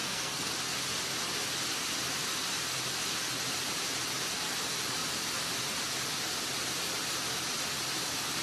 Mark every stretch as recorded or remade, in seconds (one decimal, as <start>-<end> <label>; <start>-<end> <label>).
0.0-0.5 remade; 0.5-8.4 recorded